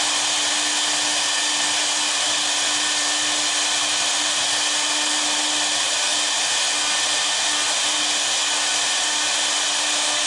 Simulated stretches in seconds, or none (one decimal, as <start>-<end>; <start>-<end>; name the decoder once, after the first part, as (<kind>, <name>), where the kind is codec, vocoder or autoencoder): none